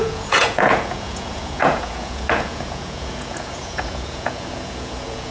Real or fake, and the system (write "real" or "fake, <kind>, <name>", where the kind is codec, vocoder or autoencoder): fake, vocoder, Vocos